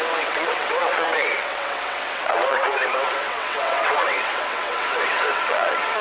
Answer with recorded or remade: remade